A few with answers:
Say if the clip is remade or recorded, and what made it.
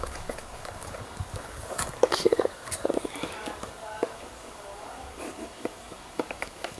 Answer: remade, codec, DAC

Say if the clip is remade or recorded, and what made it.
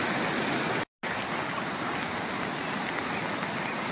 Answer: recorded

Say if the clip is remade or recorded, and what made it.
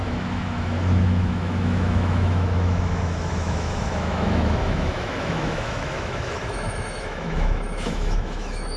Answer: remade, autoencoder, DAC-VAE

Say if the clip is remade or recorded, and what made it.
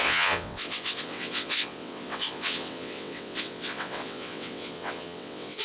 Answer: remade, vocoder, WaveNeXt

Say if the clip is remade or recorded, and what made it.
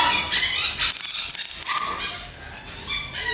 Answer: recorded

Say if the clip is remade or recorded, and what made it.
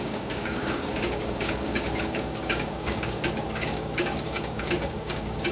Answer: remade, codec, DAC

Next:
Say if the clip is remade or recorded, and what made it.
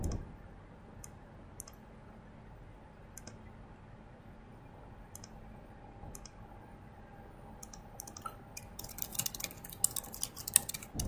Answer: recorded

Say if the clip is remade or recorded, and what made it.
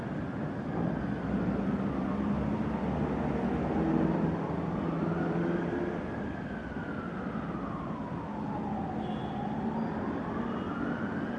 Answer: recorded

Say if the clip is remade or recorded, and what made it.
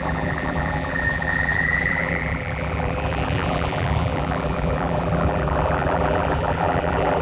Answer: remade, vocoder, BigVGAN v2